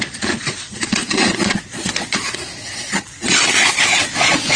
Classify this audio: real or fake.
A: fake